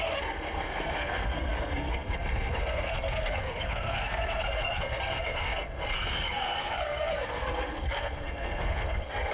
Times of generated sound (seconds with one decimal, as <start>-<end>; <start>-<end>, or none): 0.0-9.3